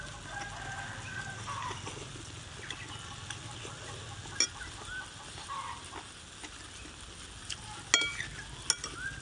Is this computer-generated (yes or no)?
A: no